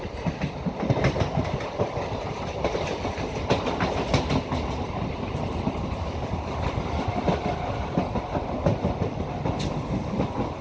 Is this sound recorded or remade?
recorded